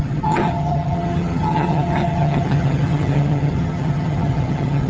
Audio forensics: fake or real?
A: fake